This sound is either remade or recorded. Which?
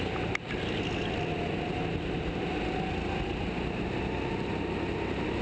recorded